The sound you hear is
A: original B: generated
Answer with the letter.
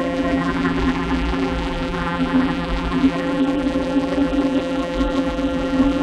B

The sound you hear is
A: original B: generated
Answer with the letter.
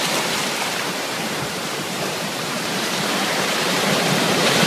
B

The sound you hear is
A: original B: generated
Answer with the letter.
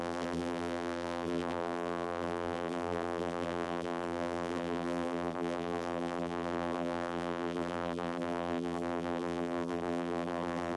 B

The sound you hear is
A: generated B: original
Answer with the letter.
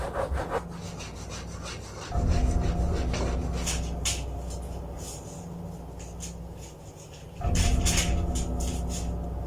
B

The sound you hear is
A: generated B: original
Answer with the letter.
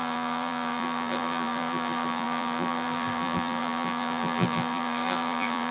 A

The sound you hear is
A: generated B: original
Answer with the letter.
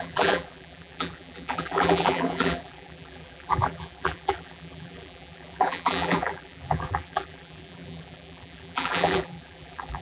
A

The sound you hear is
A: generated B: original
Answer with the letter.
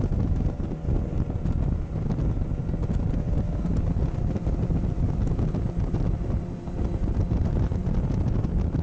B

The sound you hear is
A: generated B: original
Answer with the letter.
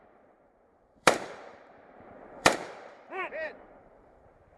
A